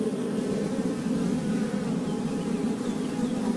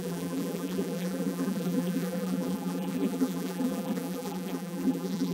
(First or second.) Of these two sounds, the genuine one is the first